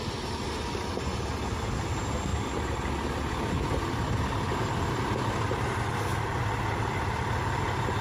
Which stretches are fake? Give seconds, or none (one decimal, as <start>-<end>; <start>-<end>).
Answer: 2.3-2.9; 6.1-7.6